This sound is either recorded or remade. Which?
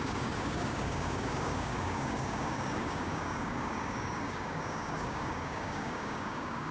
remade